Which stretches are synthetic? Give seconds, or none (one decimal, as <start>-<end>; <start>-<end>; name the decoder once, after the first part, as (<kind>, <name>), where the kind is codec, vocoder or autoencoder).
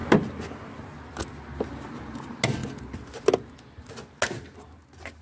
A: none